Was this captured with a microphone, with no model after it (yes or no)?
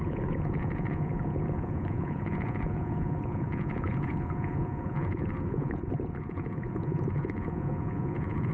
no